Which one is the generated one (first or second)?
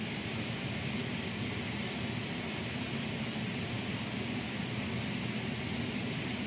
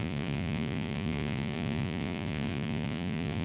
second